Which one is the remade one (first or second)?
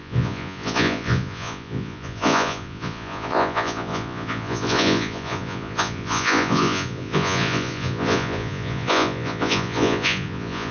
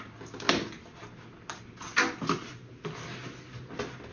first